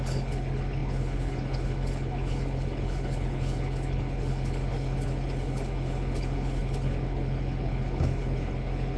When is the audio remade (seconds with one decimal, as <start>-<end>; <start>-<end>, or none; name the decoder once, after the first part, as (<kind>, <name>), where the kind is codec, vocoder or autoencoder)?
0.0-9.0 (codec, HILCodec)